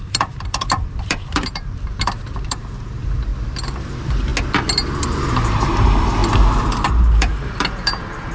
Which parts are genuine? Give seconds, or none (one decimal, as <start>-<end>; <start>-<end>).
3.3-3.8; 4.3-5.3